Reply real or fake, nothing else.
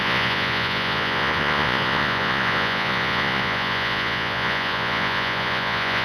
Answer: fake